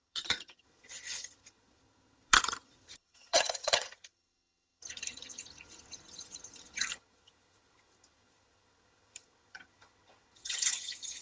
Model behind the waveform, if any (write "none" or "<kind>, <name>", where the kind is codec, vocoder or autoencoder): vocoder, HiFi-GAN